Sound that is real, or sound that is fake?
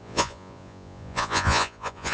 fake